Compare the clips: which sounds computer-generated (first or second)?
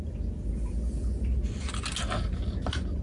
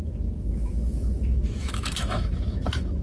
second